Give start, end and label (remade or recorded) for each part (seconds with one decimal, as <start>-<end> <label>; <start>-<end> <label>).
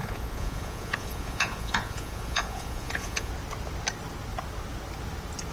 0.0-3.3 remade; 3.3-5.5 recorded